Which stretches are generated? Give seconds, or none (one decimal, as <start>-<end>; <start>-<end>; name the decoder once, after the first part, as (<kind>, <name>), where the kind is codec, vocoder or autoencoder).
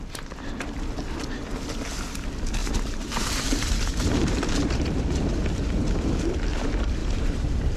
2.6-5.2 (vocoder, BigVGAN v2); 7.0-7.8